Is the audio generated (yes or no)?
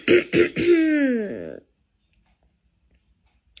no